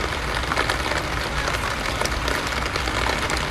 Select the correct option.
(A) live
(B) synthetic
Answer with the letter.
A